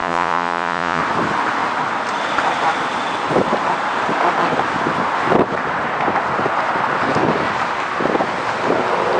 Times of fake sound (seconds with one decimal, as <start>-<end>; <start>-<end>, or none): 0.0-1.0